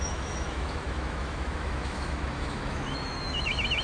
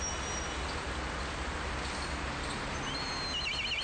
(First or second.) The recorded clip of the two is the second